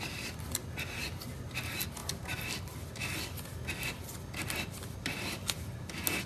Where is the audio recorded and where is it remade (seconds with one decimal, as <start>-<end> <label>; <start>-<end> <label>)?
0.0-6.3 recorded